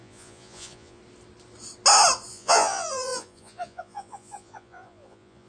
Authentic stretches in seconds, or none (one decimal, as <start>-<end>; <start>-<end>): 1.0-2.3